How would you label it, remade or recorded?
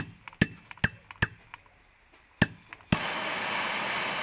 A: recorded